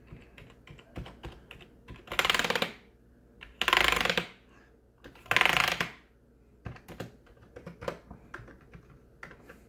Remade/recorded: recorded